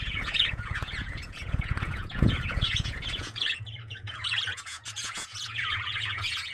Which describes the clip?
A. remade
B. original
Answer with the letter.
A